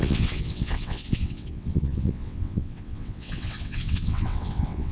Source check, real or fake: fake